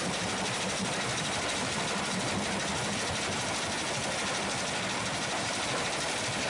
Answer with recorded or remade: remade